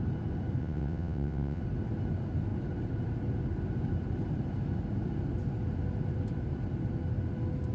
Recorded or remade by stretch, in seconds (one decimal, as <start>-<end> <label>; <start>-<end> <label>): 0.0-0.6 recorded; 0.6-1.6 remade; 1.6-7.7 recorded